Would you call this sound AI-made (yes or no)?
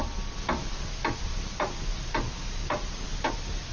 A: no